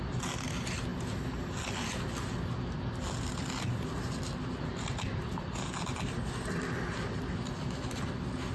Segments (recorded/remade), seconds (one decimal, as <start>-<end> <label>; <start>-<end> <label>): 0.0-8.5 recorded